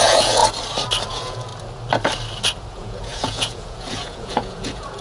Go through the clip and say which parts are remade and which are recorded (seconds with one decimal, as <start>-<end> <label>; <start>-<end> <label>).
0.0-0.4 remade; 0.4-1.1 recorded; 1.1-1.5 remade; 1.5-2.7 recorded; 2.7-5.0 remade